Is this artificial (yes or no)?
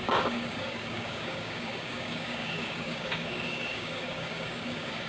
yes